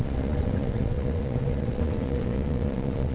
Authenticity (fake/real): fake